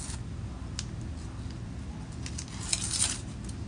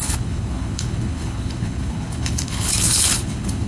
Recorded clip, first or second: first